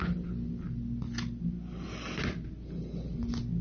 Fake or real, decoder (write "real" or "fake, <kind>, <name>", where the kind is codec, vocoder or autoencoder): real